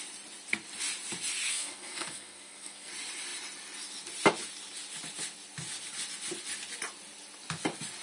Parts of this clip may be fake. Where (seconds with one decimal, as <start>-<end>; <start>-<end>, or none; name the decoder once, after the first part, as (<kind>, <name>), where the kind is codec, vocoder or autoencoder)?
1.5-2.9 (codec, SNAC)